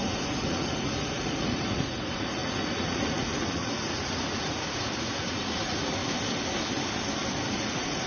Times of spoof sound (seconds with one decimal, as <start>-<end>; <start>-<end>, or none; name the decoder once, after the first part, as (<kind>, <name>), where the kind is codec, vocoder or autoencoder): 0.0-6.0 (vocoder, Vocos); 7.6-8.1